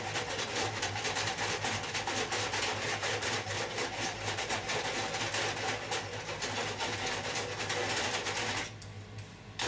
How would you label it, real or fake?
real